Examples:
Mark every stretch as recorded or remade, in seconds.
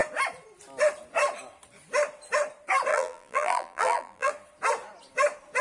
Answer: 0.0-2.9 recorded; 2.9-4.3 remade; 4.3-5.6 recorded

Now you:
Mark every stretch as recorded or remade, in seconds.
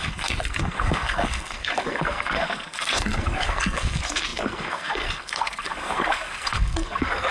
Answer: 0.0-7.3 remade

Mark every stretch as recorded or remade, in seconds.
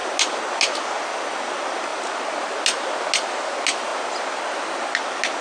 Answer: 0.0-5.4 recorded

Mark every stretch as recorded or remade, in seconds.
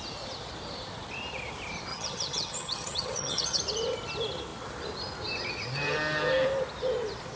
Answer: 0.0-1.9 recorded; 1.9-3.6 remade; 3.6-7.4 recorded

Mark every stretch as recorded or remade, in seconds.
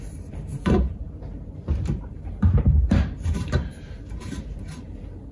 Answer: 0.0-5.3 remade